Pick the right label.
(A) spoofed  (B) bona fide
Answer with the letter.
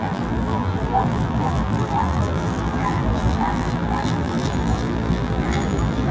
A